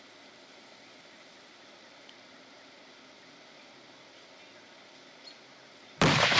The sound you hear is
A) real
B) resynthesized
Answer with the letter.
A